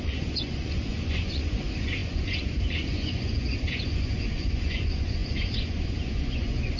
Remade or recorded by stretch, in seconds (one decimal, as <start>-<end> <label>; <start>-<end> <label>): 0.0-6.8 remade